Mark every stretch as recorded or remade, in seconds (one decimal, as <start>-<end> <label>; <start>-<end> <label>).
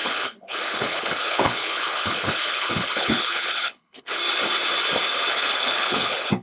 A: 0.0-4.2 remade; 4.2-5.3 recorded; 5.3-6.4 remade